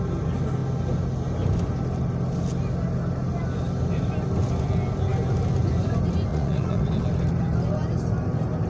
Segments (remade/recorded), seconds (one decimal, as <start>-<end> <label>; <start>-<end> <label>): 0.0-6.3 recorded; 6.3-6.9 remade; 6.9-8.7 recorded